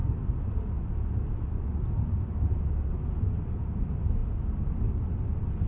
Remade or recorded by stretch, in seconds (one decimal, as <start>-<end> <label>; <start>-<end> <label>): 0.0-5.7 recorded